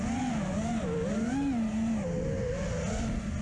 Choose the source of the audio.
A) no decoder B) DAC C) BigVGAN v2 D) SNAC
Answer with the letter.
A